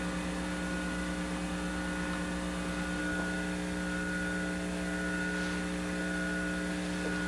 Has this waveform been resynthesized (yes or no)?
no